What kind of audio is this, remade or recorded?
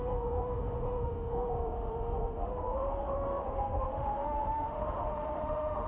remade